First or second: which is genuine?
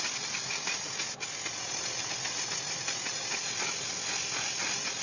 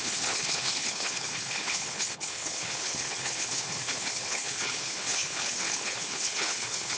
first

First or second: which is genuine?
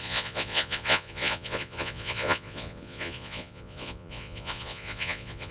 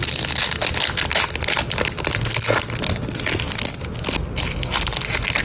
second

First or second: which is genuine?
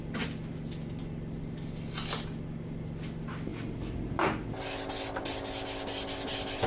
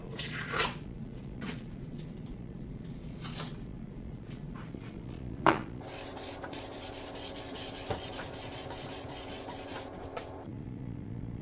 first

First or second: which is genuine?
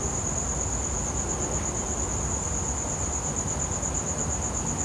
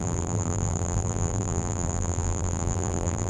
first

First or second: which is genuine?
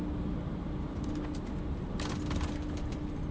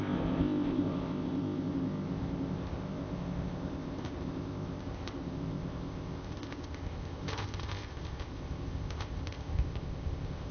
first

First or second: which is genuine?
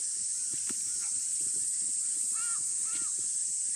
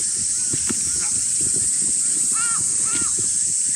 second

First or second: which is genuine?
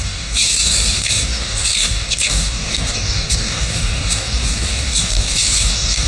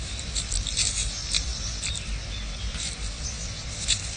second